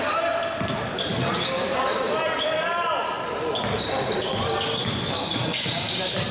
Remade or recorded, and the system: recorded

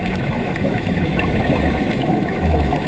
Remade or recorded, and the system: remade, autoencoder, DAC-VAE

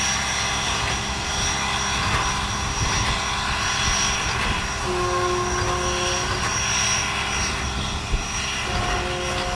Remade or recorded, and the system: recorded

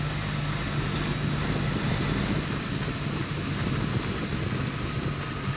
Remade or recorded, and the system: recorded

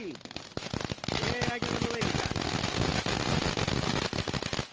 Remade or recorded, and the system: recorded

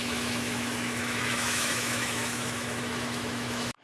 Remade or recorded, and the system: remade, autoencoder, DAC-VAE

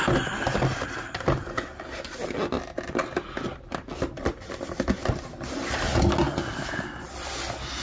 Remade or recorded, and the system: recorded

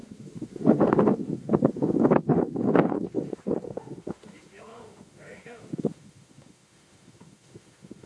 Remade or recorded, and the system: remade, autoencoder, DAC-VAE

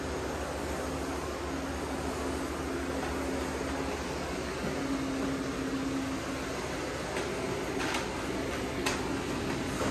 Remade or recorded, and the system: recorded